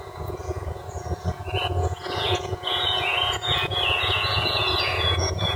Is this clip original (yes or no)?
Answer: no